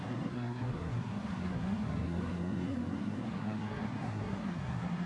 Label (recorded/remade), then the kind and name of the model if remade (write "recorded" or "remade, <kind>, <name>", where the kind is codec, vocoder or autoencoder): remade, codec, SNAC